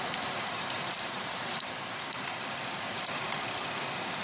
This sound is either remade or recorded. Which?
remade